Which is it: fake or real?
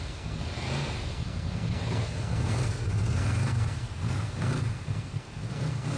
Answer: fake